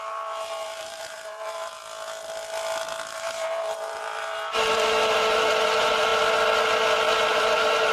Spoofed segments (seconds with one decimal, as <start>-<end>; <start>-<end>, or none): 0.0-1.8; 3.1-6.1; 7.3-7.9